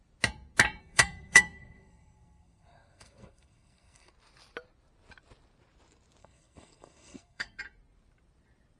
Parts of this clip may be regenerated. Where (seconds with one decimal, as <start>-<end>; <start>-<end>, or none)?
0.8-4.1; 6.2-7.6